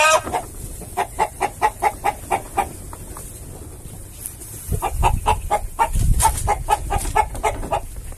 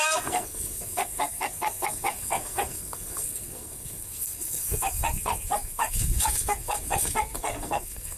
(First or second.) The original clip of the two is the first